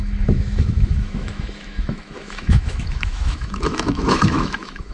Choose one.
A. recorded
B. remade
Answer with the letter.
B